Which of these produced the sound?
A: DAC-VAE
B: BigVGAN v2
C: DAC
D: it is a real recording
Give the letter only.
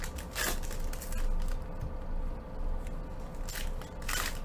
D